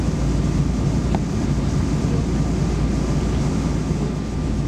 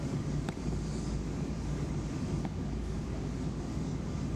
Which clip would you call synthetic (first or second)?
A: second